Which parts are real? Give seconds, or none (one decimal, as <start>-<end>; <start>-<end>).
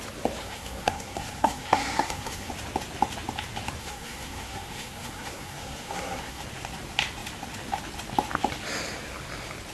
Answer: 0.0-0.4; 2.5-3.8; 6.4-9.7